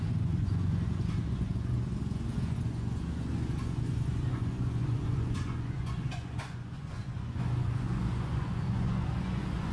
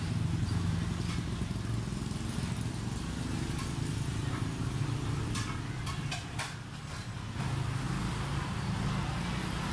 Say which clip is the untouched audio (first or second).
second